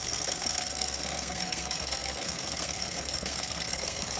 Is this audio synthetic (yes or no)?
yes